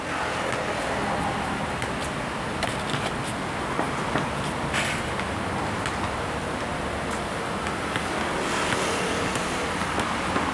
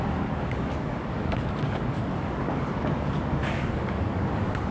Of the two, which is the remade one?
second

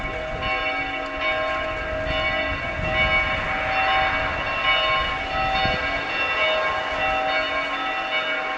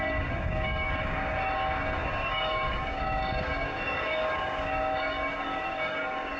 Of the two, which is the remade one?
second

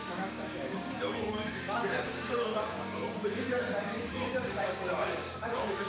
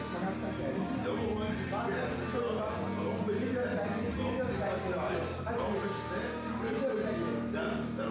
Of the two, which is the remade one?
first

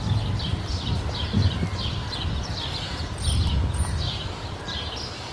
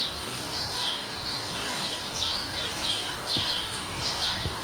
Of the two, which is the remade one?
second